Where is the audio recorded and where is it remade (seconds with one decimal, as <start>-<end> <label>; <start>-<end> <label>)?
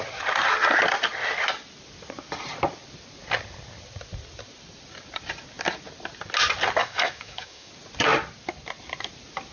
0.0-6.8 recorded; 6.8-7.7 remade; 7.7-9.5 recorded